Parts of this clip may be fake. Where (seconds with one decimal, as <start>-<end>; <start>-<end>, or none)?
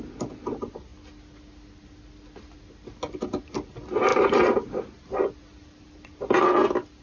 none